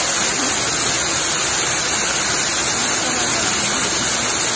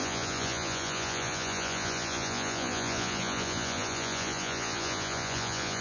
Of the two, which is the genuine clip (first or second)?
first